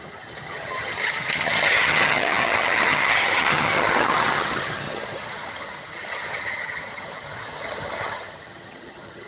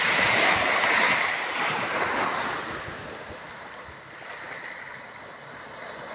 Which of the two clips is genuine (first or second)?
second